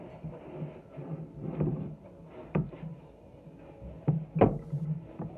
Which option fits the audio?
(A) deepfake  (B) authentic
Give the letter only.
B